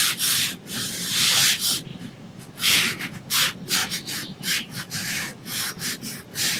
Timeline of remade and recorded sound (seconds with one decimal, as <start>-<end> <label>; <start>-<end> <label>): 0.0-1.9 recorded; 1.9-3.3 remade; 3.3-3.8 recorded; 3.8-5.7 remade; 5.7-6.6 recorded